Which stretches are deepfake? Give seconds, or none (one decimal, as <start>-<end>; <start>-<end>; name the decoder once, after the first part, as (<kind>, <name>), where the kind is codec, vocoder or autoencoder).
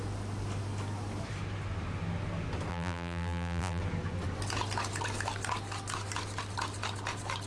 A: 2.7-3.8 (vocoder, BigVGAN v2)